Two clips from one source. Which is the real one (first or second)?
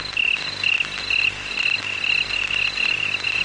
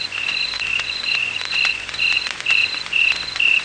first